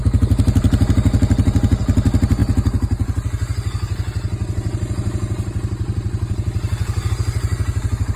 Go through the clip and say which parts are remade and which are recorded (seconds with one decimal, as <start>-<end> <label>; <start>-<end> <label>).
0.0-8.2 recorded